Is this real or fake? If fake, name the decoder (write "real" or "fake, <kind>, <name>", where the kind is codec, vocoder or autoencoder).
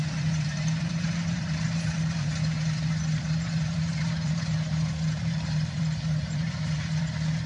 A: fake, vocoder, BigVGAN v2